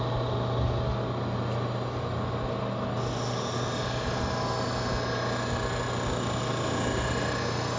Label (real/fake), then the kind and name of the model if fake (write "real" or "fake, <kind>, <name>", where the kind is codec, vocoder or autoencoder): real